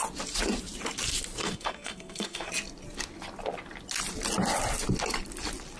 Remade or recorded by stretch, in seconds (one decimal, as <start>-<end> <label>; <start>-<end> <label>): 0.0-1.4 recorded; 1.4-2.5 remade; 2.5-5.8 recorded